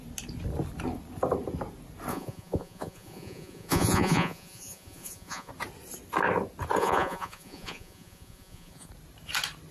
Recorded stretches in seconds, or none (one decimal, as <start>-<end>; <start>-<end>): 0.0-2.1; 5.5-6.8; 8.9-9.7